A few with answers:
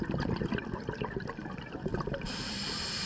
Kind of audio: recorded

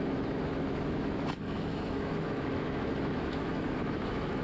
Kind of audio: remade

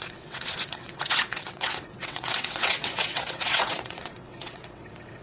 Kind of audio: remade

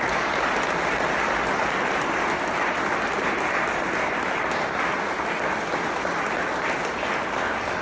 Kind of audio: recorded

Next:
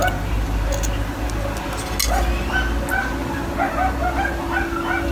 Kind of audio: recorded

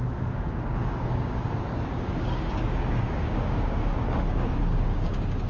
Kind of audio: remade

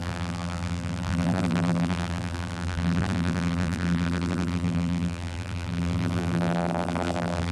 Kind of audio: remade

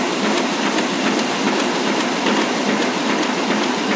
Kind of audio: recorded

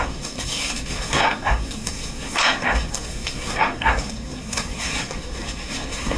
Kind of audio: remade